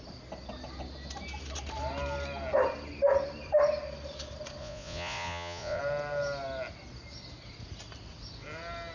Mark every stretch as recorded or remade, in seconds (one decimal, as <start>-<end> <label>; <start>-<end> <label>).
0.0-4.6 recorded; 4.6-5.8 remade; 5.8-8.9 recorded